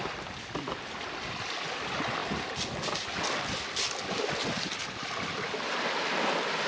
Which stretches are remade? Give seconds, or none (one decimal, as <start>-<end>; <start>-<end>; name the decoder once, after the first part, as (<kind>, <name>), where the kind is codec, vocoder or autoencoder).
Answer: none